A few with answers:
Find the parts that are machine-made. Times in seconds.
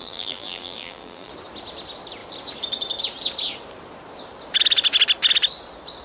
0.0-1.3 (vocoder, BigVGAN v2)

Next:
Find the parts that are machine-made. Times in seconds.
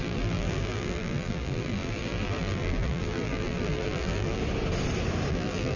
0.0-4.4 (vocoder, BigVGAN v2); 5.3-5.8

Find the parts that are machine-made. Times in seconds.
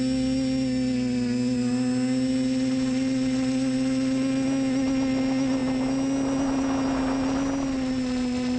none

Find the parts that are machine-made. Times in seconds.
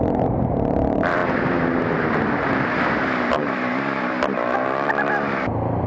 0.0-1.2 (vocoder, BigVGAN v2); 2.2-5.9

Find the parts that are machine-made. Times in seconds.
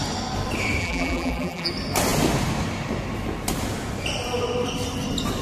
0.8-1.7 (vocoder, BigVGAN v2)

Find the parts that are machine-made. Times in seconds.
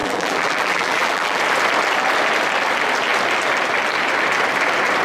0.0-1.4 (vocoder, BigVGAN v2)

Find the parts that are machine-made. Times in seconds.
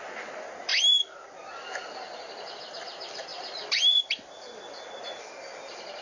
0.7-1.5 (vocoder, BigVGAN v2); 3.3-5.0